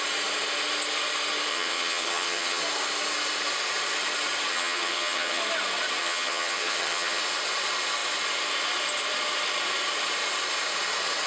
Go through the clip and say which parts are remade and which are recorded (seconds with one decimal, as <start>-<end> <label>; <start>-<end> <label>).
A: 0.0-1.5 recorded; 1.5-2.6 remade; 2.6-4.5 recorded; 4.5-5.4 remade; 5.4-6.0 recorded; 6.0-7.2 remade; 7.2-11.3 recorded

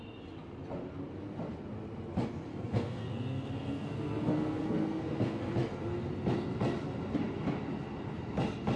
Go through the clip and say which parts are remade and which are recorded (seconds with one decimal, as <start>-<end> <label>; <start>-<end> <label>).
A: 0.0-2.5 recorded; 2.5-5.5 remade; 5.5-8.8 recorded

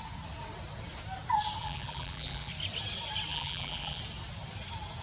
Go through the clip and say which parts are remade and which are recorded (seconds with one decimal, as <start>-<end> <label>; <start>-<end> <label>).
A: 0.0-1.6 recorded; 1.6-2.5 remade; 2.5-3.3 recorded; 3.3-4.0 remade; 4.0-5.0 recorded

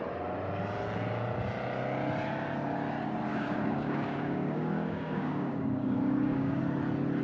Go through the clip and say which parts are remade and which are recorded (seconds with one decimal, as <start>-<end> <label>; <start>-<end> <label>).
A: 0.0-3.3 recorded; 3.3-6.6 remade; 6.6-7.2 recorded

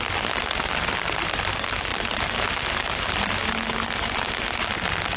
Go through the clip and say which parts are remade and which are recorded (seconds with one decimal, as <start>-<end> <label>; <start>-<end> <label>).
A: 0.0-5.2 recorded

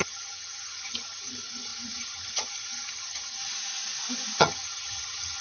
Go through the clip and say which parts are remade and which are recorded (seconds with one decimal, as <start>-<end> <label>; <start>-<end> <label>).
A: 0.0-3.4 remade; 3.4-4.4 recorded; 4.4-5.4 remade